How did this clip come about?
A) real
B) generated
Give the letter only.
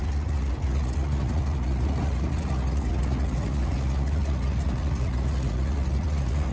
B